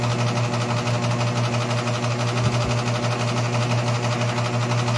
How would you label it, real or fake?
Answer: real